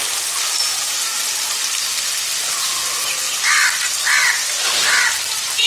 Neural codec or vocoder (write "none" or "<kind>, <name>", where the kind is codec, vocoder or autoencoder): none